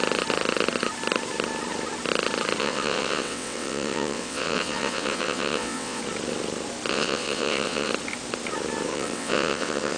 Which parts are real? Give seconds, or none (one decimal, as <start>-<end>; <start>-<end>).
0.0-2.6; 6.0-6.9; 7.9-8.9